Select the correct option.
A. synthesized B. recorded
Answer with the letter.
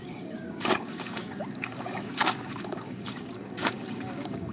A